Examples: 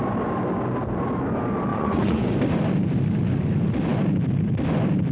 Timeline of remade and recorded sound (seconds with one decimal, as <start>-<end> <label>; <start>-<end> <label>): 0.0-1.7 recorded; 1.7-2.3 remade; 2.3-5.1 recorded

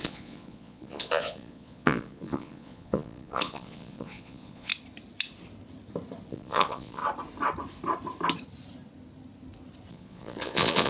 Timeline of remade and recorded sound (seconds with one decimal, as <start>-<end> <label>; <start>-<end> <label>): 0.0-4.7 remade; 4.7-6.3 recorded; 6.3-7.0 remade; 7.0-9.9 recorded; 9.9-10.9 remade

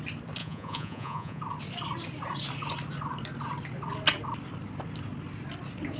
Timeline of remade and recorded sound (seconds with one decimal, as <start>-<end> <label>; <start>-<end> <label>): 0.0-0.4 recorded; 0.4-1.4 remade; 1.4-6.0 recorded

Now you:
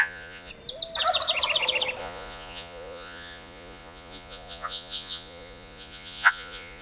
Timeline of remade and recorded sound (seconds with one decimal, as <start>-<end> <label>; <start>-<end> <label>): 0.0-0.5 remade; 0.5-2.0 recorded; 2.0-6.8 remade

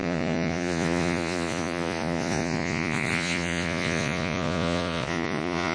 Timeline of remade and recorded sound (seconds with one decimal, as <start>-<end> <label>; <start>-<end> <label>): 0.0-5.7 remade